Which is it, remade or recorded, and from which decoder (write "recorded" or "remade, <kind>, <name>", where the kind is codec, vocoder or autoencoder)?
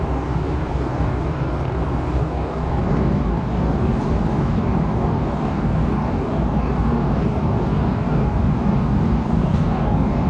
remade, codec, DAC